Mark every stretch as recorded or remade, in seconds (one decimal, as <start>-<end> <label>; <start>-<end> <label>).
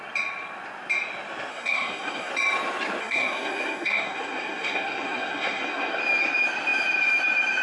0.0-1.5 recorded; 1.5-2.3 remade; 2.3-3.0 recorded; 3.0-6.0 remade; 6.0-7.6 recorded